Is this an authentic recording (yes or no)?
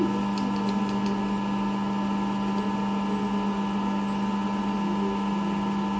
yes